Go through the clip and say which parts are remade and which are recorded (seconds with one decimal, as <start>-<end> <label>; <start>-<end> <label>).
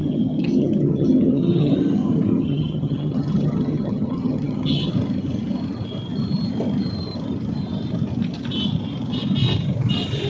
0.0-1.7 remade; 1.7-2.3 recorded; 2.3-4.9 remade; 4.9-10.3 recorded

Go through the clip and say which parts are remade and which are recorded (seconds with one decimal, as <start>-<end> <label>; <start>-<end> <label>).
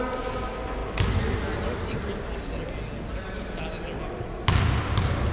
0.0-5.3 recorded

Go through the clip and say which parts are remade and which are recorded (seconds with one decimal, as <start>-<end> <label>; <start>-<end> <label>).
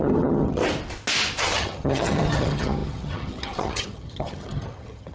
0.0-0.6 remade; 0.6-1.4 recorded; 1.4-5.1 remade